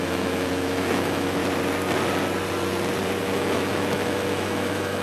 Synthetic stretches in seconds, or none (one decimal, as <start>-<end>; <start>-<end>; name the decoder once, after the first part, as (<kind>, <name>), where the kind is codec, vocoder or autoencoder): 0.0-1.4 (autoencoder, DAC-VAE); 3.2-5.0